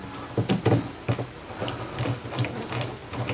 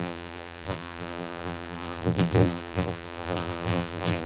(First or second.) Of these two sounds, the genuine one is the first